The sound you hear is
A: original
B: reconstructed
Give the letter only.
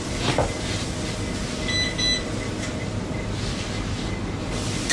A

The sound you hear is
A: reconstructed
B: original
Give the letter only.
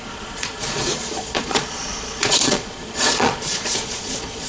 A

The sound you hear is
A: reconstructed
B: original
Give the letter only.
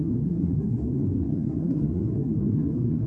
A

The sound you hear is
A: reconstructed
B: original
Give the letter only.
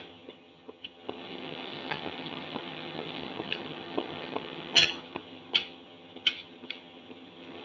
A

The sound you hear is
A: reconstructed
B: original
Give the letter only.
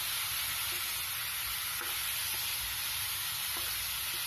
B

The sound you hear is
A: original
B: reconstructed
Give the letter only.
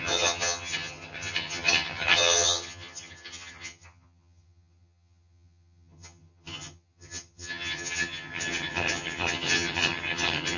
B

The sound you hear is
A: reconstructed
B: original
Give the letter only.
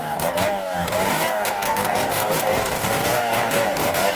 A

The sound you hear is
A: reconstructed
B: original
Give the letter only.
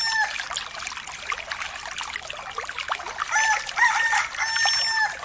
B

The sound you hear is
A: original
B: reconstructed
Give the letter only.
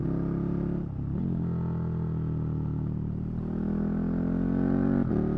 A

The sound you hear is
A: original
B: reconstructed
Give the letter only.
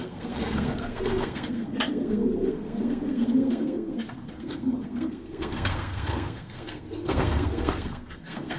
B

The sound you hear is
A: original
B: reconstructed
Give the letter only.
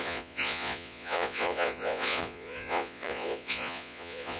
B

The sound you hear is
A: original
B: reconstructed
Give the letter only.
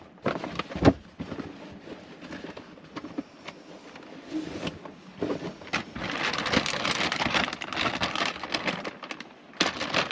A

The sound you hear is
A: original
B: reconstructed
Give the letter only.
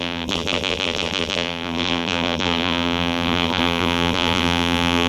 B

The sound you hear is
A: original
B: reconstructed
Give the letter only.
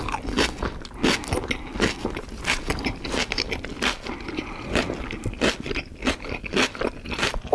A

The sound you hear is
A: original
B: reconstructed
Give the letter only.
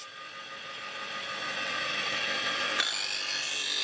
A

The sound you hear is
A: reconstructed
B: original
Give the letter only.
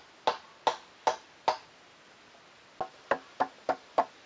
B